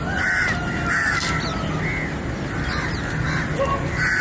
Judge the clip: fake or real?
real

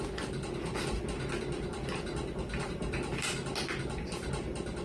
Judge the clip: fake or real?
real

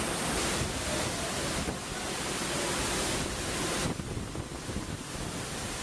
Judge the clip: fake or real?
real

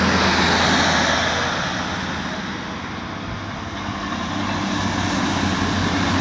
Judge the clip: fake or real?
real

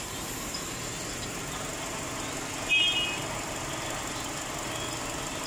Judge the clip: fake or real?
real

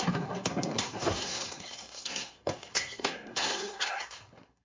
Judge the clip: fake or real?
fake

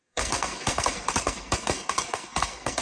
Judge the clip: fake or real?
fake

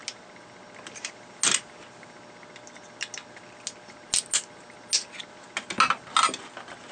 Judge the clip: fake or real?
real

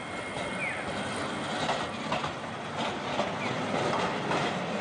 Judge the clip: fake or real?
real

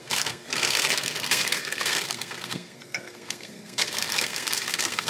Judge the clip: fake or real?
fake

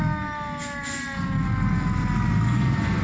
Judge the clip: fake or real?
real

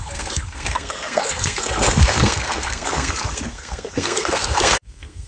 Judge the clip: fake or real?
fake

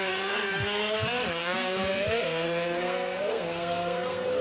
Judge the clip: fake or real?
fake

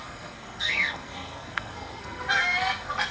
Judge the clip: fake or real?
fake